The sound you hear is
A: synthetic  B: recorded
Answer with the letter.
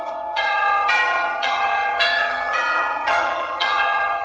A